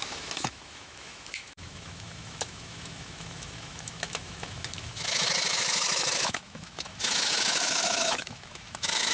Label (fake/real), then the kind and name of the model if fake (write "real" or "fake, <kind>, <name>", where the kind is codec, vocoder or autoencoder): fake, autoencoder, DAC-VAE